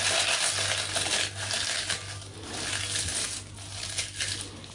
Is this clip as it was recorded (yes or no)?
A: yes